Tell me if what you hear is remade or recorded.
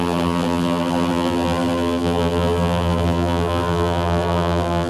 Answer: remade